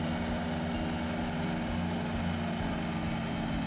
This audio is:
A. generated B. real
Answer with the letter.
B